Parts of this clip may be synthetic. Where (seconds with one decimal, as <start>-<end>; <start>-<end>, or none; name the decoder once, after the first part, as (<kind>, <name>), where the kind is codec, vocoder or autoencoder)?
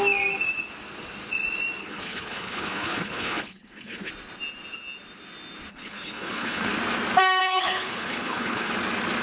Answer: 1.8-4.1 (codec, HILCodec); 5.7-6.7; 7.4-8.7